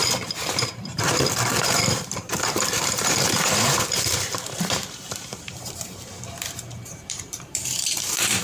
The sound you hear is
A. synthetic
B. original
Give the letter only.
A